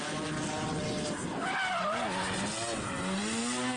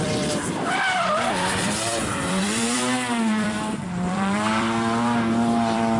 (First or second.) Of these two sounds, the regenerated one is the second